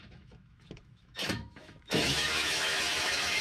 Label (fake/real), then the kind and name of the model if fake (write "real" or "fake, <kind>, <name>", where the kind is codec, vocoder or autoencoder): fake, autoencoder, DAC-VAE